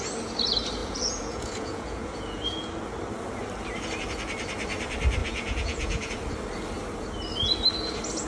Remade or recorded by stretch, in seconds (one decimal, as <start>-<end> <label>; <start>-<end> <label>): 0.0-0.8 recorded; 0.8-2.7 remade; 2.7-5.2 recorded; 5.2-6.1 remade; 6.1-8.3 recorded